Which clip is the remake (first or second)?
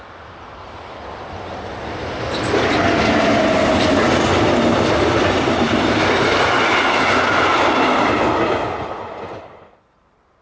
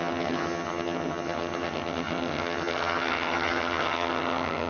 second